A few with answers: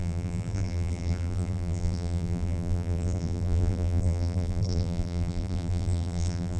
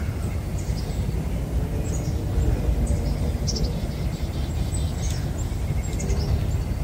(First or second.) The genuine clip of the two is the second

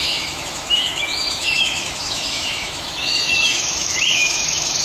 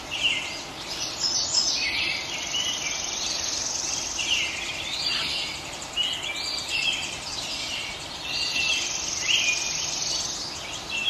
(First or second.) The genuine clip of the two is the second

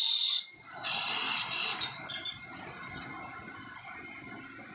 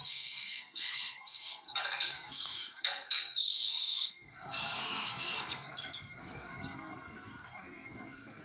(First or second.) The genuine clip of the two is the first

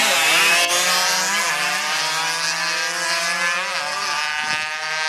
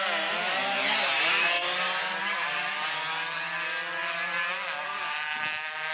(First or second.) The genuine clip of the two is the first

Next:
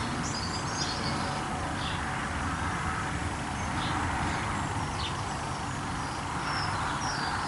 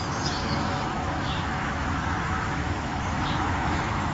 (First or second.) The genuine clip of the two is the first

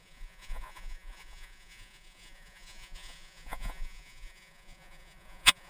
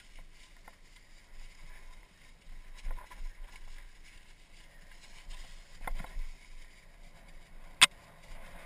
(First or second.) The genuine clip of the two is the second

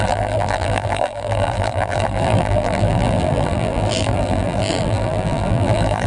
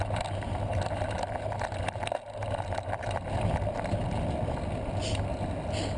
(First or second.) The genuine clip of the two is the second